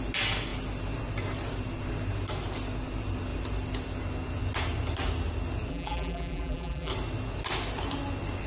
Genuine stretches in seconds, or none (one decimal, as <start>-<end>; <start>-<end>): 0.0-5.7; 6.9-8.5